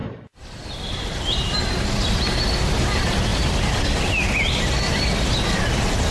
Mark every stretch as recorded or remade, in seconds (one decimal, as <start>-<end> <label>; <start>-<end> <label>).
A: 0.0-6.1 recorded